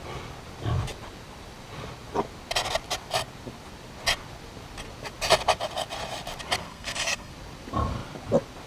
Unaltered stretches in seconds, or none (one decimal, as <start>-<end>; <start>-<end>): 0.0-6.6; 7.3-8.7